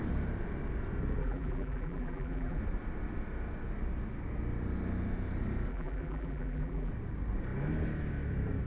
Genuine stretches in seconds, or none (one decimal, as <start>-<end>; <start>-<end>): 0.0-1.2; 2.6-5.7; 6.9-8.7